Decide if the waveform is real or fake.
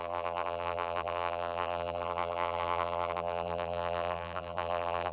fake